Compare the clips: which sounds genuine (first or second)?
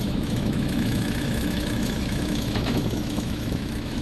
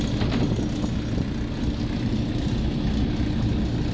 second